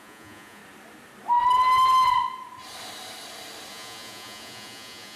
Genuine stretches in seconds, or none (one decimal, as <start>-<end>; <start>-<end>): 0.6-3.7